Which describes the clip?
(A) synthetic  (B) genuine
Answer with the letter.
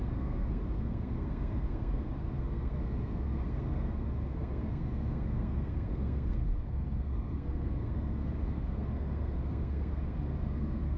A